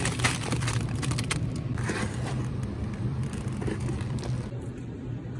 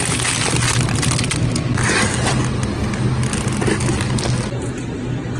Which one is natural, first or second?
second